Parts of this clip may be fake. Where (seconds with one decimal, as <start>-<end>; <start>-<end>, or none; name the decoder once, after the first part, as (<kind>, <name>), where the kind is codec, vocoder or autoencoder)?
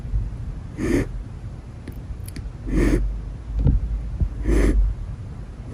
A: 0.0-2.2 (vocoder, BigVGAN v2); 4.2-5.7